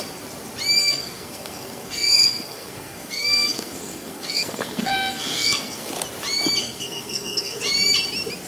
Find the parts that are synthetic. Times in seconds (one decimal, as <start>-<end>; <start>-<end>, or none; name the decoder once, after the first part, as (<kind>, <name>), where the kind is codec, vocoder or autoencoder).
0.8-5.9 (codec, SNAC); 6.6-7.6